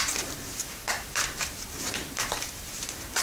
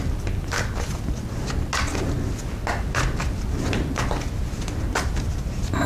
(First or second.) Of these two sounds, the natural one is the second